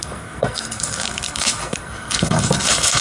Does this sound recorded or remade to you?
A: remade